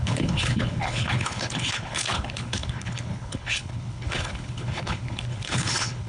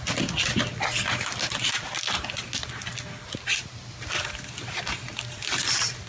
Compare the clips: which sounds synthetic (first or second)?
first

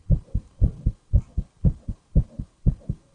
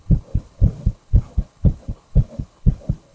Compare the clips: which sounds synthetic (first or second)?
second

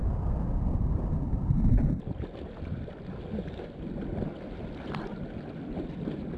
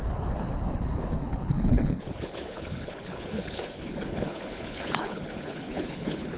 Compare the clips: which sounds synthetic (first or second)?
second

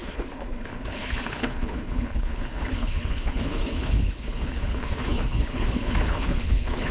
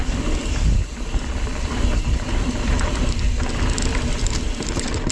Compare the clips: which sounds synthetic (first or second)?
first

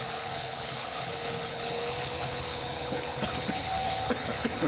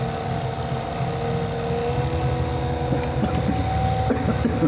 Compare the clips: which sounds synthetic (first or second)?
first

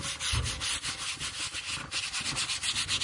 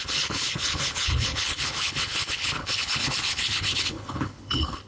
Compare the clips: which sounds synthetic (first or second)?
second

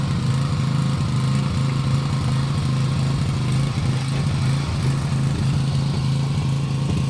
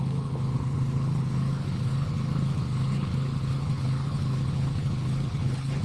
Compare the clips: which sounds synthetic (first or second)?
second